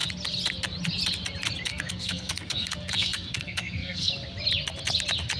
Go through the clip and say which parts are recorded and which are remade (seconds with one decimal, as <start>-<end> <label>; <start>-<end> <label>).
0.0-1.7 recorded; 1.7-4.1 remade; 4.1-5.4 recorded